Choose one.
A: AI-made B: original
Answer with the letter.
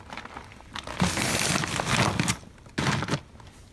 B